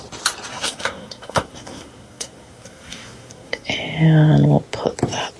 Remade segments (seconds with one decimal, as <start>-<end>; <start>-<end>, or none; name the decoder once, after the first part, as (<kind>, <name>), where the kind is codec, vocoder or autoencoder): 0.5-3.7 (codec, SNAC)